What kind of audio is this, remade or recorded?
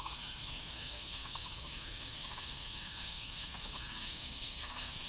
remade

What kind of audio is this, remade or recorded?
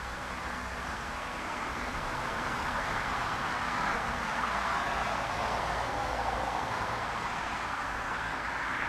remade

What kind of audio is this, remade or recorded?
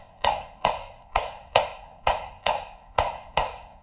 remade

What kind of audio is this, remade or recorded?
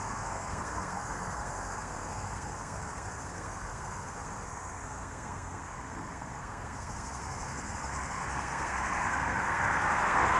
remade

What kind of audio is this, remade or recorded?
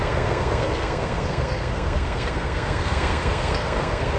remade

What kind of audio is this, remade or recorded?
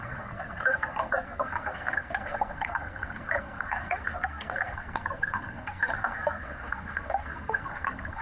remade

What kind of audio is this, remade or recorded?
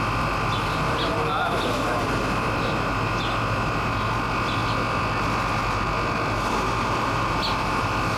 recorded